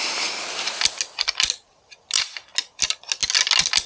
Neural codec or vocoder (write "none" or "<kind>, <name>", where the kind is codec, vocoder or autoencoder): none